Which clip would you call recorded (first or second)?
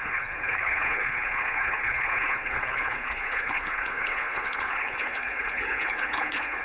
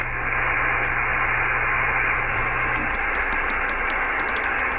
second